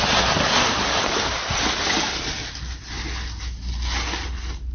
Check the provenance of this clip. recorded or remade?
recorded